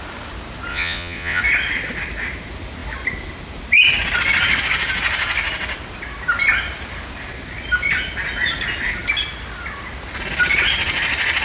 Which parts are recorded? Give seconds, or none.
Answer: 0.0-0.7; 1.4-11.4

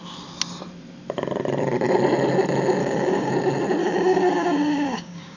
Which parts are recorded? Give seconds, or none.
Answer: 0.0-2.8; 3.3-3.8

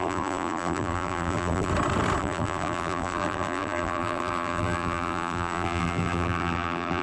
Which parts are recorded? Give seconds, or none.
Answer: 1.7-2.2

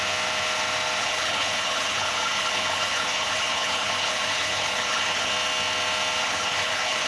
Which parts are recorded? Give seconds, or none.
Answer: 0.0-1.0; 5.3-6.2

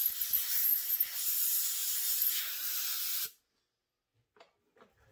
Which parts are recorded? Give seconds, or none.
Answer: 0.0-1.8; 2.8-5.1

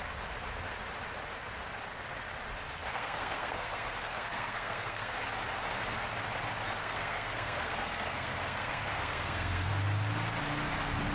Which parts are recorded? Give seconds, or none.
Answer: 0.0-2.9; 5.2-6.8; 9.7-11.1